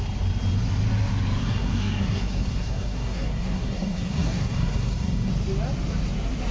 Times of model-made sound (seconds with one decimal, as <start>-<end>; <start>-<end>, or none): 1.4-5.3